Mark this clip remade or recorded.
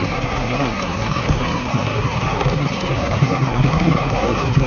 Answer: remade